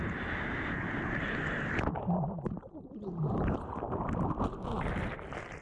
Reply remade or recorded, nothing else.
recorded